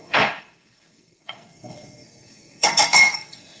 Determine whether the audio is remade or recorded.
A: remade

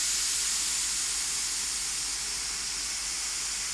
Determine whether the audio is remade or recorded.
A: recorded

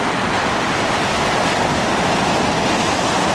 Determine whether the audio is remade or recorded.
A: recorded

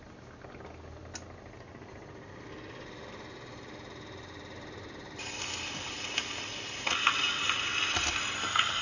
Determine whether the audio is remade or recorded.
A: recorded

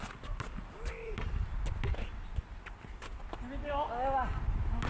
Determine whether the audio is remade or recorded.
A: recorded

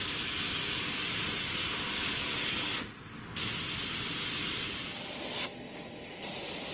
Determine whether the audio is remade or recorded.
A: recorded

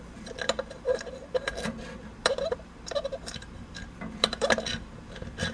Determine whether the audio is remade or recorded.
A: remade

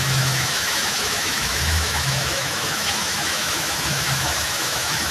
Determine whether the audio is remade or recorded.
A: remade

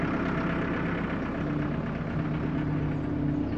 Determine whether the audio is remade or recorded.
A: recorded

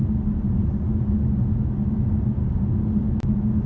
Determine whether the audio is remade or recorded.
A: recorded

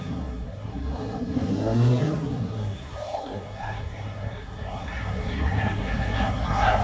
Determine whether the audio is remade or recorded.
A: remade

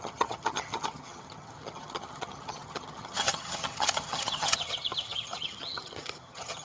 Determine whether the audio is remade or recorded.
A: remade